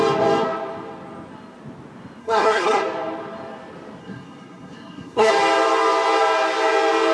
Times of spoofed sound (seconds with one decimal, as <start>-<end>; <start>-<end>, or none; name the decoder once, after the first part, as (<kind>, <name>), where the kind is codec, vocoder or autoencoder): 2.2-2.8 (codec, SNAC); 4.0-5.3